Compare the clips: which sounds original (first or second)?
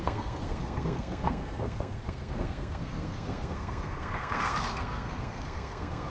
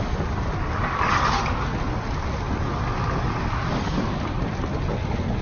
second